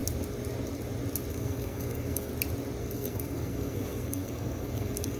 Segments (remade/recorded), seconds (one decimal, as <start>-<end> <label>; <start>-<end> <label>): 0.0-1.3 recorded; 1.3-2.3 remade; 2.3-2.8 recorded; 2.8-5.2 remade